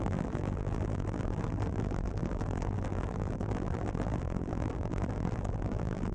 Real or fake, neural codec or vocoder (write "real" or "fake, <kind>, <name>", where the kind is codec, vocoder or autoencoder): fake, vocoder, BigVGAN v2